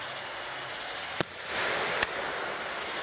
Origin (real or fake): real